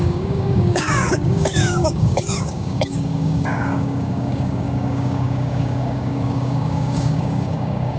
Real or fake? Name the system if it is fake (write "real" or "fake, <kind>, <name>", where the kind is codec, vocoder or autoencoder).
fake, codec, DAC